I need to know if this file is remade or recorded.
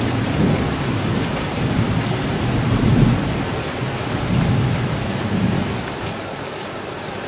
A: recorded